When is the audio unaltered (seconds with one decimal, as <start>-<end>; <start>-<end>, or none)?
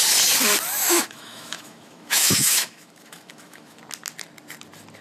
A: 0.0-0.8; 3.8-5.0